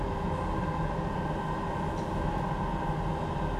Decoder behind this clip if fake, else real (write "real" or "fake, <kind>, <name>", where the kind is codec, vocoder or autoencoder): real